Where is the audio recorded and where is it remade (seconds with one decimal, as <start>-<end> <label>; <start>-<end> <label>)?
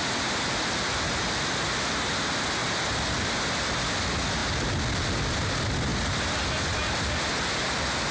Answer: 0.0-8.1 recorded